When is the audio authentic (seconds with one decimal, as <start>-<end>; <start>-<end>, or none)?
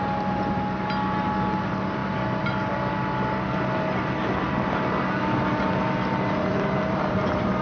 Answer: 0.0-6.5